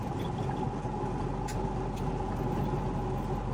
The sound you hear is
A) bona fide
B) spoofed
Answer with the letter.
A